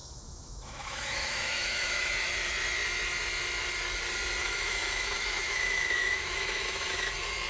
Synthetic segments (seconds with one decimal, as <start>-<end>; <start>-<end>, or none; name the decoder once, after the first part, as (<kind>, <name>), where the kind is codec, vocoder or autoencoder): 0.0-2.1 (autoencoder, DAC-VAE); 4.4-7.1